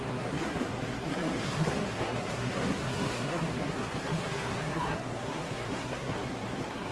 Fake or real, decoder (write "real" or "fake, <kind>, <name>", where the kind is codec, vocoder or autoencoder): fake, codec, SNAC